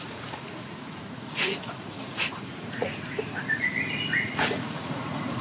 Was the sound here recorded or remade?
remade